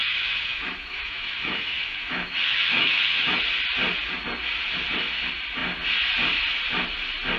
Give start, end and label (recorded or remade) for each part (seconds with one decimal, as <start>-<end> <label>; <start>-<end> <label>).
0.0-3.4 remade; 3.4-7.4 recorded